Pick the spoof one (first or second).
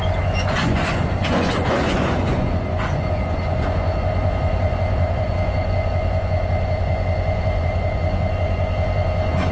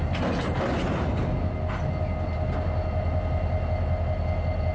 first